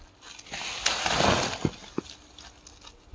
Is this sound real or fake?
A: real